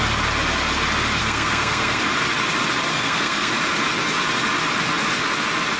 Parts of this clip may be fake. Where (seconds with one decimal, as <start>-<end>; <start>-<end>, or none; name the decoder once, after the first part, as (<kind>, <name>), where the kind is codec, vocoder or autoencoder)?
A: 1.2-2.0 (codec, SNAC); 2.9-3.5